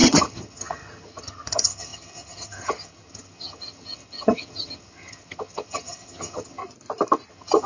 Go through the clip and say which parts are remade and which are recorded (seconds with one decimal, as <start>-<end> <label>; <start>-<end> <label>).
0.0-6.6 remade; 6.6-7.3 recorded; 7.3-7.7 remade